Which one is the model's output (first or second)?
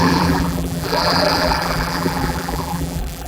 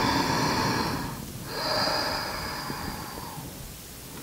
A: first